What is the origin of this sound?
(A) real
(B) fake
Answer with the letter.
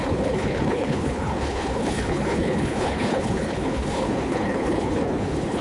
B